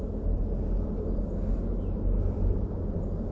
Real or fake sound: real